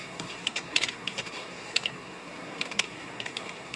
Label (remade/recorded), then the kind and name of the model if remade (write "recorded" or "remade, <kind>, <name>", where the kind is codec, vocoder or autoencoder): remade, codec, SNAC